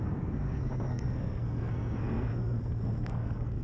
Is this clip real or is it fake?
fake